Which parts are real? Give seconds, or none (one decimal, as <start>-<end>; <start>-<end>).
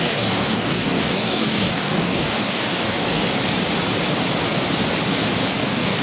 3.2-5.6